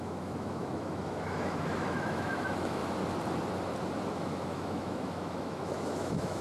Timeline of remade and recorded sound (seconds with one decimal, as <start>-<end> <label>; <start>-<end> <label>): 0.0-2.8 remade; 2.8-4.1 recorded; 4.1-6.4 remade